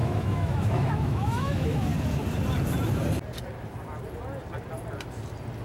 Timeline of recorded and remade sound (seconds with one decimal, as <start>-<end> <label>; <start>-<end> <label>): 0.0-1.9 remade; 1.9-5.6 recorded